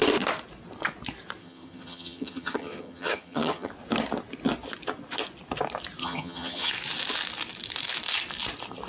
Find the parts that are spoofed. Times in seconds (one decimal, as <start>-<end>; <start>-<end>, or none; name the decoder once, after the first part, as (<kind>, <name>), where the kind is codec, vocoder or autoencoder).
1.4-3.7 (vocoder, HiFi-GAN); 6.0-6.7